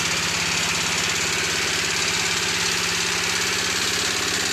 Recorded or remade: recorded